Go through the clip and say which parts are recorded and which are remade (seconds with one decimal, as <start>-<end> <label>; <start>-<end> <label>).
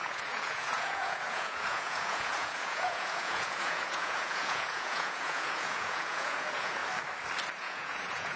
0.0-6.8 remade; 6.8-7.6 recorded; 7.6-8.4 remade